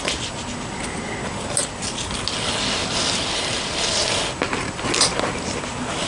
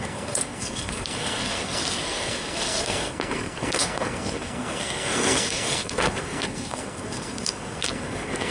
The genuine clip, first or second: first